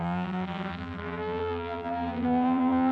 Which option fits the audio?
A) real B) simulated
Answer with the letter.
B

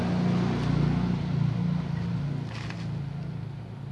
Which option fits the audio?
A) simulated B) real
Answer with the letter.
B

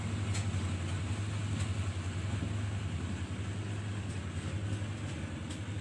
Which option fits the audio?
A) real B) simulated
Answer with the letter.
A